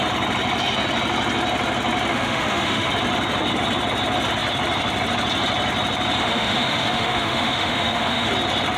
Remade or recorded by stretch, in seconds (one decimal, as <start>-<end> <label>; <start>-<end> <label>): 0.0-2.1 recorded; 2.1-2.9 remade; 2.9-6.2 recorded; 6.2-8.3 remade; 8.3-8.8 recorded